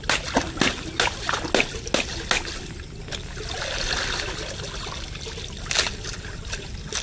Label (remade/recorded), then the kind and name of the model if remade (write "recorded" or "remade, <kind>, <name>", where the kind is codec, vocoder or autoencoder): recorded